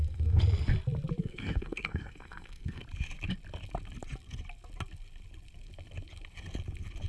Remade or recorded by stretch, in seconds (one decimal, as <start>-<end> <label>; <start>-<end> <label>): 0.0-0.4 remade; 0.4-1.2 recorded; 1.2-2.8 remade; 2.8-7.1 recorded